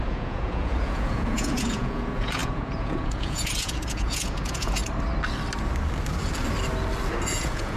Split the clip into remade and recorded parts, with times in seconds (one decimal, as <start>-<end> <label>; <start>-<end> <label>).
0.0-4.8 remade; 4.8-7.3 recorded; 7.3-7.8 remade